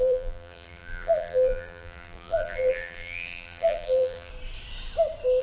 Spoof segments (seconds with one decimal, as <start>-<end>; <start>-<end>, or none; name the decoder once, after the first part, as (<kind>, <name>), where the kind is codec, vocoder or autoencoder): 0.0-4.3 (vocoder, BigVGAN v2)